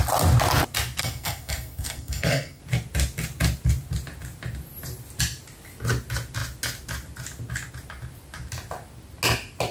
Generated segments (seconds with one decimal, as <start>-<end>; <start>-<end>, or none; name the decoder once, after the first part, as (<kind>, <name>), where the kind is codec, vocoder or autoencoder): 1.0-2.6 (codec, SNAC)